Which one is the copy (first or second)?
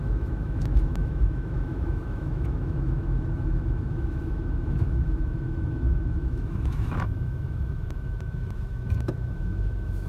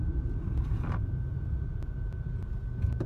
first